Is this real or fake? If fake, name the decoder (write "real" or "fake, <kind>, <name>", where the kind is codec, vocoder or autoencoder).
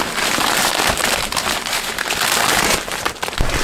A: fake, vocoder, BigVGAN v2